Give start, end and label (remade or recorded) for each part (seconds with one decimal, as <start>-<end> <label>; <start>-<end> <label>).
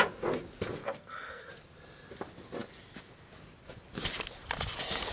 0.0-0.8 recorded; 0.8-1.5 remade; 1.5-5.1 recorded